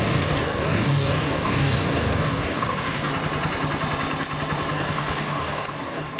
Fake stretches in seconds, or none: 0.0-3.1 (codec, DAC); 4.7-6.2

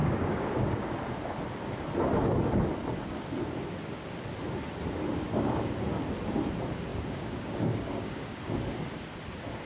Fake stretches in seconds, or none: 0.0-0.9 (codec, DAC); 5.1-5.8; 6.9-8.6

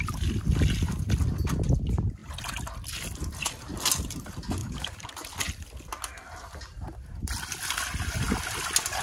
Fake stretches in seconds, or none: 4.6-5.1 (codec, DAC)

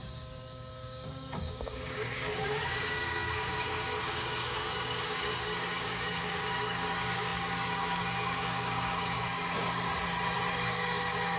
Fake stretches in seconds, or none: 0.0-9.9 (codec, DAC); 10.5-11.4

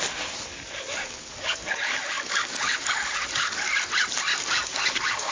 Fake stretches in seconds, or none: 0.5-3.7 (codec, DAC); 4.3-5.3

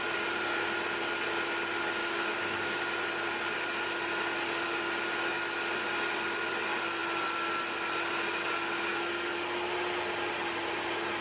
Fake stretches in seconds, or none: 2.0-2.8 (codec, DAC)